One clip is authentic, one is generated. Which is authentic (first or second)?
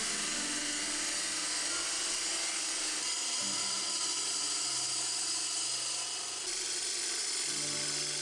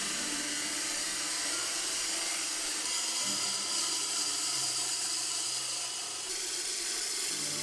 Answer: first